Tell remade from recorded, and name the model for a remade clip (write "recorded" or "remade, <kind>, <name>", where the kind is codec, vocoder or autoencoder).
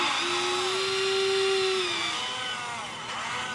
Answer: recorded